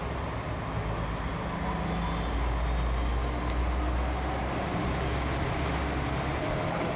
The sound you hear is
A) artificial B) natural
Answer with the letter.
B